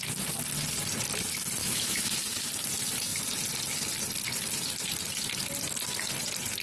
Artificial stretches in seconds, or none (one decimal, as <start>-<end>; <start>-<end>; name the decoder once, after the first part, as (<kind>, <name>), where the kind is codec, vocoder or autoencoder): 1.6-2.2 (autoencoder, DAC-VAE)